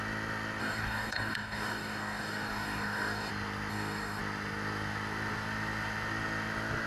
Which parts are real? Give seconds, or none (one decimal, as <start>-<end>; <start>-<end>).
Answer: 0.0-0.6; 3.3-3.7; 4.2-6.9